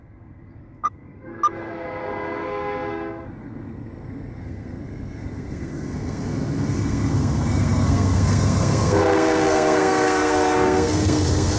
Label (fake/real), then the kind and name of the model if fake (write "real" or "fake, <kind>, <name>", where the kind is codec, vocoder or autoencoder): fake, codec, SNAC